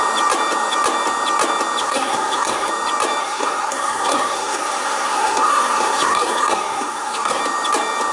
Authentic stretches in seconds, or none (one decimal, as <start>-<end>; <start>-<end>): 0.0-1.8; 2.7-3.2; 7.4-8.1